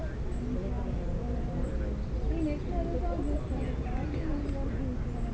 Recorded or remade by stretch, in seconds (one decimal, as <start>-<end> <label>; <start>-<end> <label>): 0.0-5.3 recorded